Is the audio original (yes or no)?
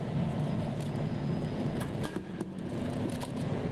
no